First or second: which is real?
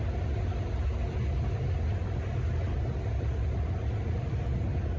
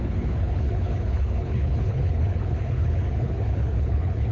first